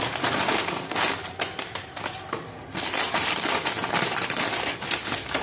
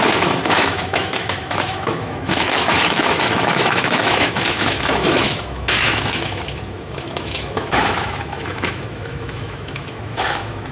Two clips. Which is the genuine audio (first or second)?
first